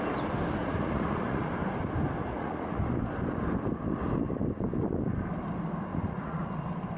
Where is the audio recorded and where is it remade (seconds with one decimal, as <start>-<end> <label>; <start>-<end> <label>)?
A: 0.0-0.6 recorded; 0.6-1.5 remade; 1.5-2.2 recorded; 2.2-2.8 remade; 2.8-5.9 recorded; 5.9-6.5 remade; 6.5-7.0 recorded